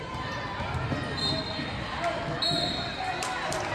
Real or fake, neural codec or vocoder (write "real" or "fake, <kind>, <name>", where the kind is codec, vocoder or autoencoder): real